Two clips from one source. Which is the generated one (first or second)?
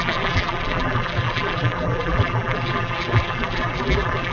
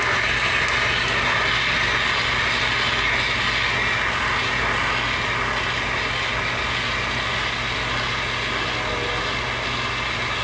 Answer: first